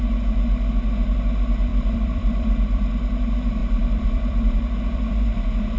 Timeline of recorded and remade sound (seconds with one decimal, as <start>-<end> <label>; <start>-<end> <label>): 0.0-1.7 recorded; 1.7-2.9 remade; 2.9-3.6 recorded; 3.6-5.1 remade; 5.1-5.8 recorded